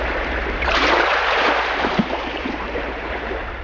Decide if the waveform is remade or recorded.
remade